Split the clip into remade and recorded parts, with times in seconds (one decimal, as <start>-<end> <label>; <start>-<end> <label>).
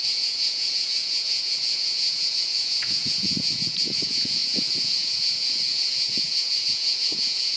0.0-7.6 remade